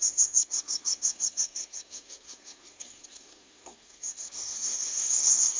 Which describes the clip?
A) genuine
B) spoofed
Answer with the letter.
B